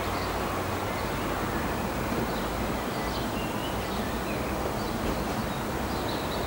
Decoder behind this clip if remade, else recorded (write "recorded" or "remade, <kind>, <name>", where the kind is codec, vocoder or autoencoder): recorded